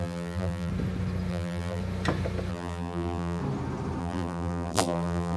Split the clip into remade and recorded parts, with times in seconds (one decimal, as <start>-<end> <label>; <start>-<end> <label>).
0.0-0.7 remade; 0.7-1.3 recorded; 1.3-1.8 remade; 1.8-2.5 recorded; 2.5-3.4 remade; 3.4-4.0 recorded; 4.0-5.4 remade